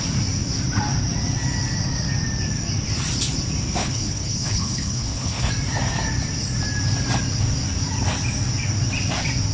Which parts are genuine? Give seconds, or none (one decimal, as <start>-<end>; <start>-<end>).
0.0-3.8; 5.5-9.5